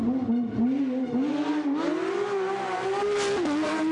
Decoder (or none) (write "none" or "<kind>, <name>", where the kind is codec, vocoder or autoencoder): none